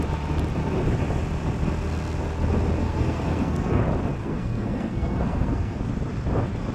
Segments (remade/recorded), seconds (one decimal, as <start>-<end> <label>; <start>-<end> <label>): 0.0-2.8 recorded; 2.8-3.8 remade; 3.8-4.2 recorded; 4.2-5.8 remade; 5.8-6.7 recorded